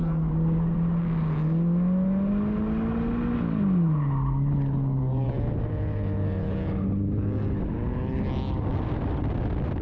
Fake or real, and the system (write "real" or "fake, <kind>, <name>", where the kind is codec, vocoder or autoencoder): real